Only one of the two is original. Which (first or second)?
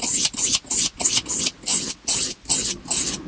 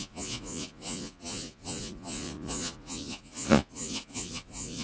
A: first